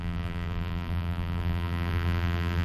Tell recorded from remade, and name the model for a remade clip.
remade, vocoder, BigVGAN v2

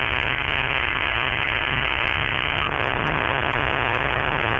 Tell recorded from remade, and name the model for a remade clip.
remade, vocoder, HiFi-GAN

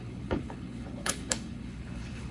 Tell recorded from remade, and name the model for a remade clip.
remade, codec, HILCodec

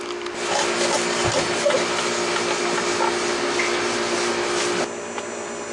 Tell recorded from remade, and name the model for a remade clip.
recorded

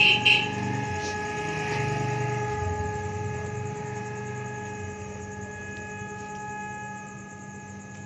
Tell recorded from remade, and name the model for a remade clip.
recorded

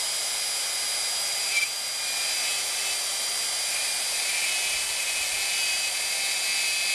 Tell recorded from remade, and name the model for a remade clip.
recorded